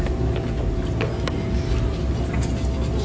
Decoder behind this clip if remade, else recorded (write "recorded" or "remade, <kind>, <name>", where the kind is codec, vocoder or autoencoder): recorded